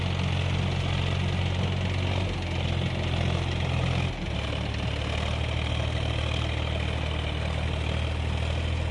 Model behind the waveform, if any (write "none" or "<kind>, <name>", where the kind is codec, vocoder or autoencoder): none